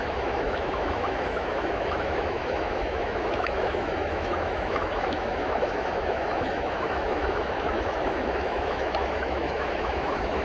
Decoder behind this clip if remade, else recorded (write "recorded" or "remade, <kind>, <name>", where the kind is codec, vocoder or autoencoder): remade, autoencoder, DAC-VAE